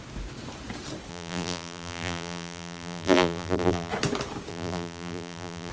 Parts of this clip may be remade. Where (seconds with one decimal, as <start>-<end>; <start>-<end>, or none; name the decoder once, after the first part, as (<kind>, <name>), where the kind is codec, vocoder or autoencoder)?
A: 1.1-3.9 (vocoder, BigVGAN v2); 4.5-5.7